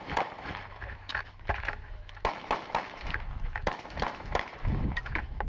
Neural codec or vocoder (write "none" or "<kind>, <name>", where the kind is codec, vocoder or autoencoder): autoencoder, DAC-VAE